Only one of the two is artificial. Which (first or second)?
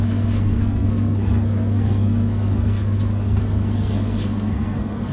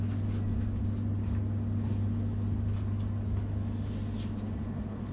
first